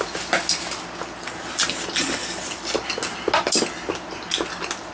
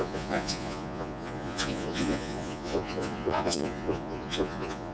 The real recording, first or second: first